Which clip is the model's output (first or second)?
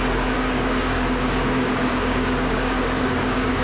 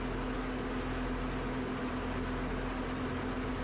first